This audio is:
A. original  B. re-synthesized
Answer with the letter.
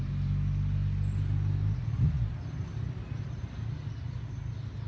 A